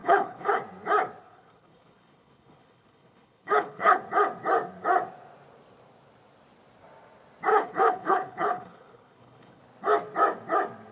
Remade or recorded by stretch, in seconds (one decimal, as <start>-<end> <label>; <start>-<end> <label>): 0.0-0.6 remade; 0.6-1.2 recorded; 1.2-4.0 remade; 4.0-7.5 recorded; 7.5-9.6 remade; 9.6-10.9 recorded